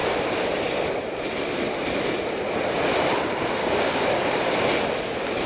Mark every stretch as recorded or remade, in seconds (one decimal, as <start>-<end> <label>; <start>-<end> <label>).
0.0-3.6 recorded; 3.6-4.5 remade; 4.5-5.5 recorded